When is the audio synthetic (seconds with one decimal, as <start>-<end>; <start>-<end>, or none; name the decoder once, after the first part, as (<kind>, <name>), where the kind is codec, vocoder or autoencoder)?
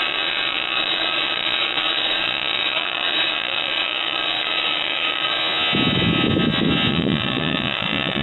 0.0-5.4 (vocoder, Vocos); 6.9-8.2